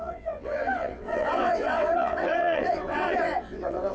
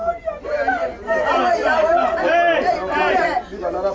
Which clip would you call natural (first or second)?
second